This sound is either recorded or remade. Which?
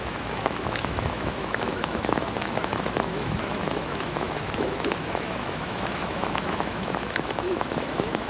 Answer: remade